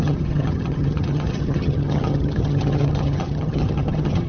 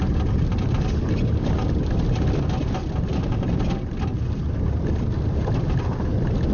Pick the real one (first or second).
second